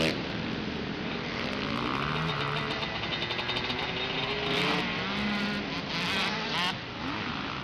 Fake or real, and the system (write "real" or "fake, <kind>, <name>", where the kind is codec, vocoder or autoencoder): real